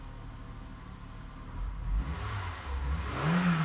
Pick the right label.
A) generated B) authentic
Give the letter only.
B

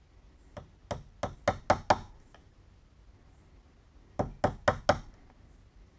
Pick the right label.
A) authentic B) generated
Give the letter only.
A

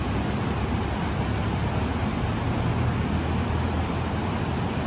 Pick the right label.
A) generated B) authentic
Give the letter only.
B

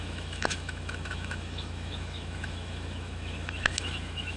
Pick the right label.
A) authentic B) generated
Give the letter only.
B